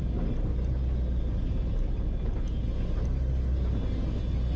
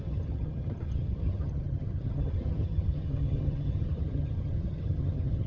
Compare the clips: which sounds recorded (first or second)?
first